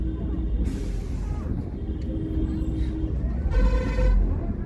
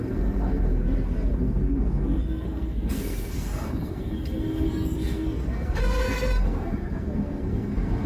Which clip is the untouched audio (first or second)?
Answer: first